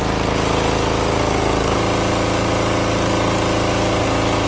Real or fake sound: real